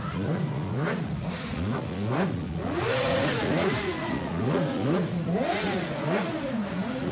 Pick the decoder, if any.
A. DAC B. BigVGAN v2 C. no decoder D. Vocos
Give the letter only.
D